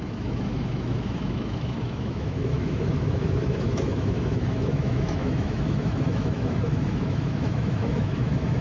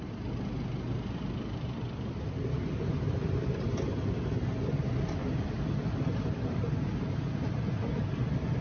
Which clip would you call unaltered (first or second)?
second